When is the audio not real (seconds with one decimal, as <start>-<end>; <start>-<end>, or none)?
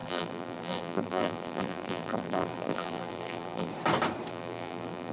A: 0.0-3.7; 4.3-5.1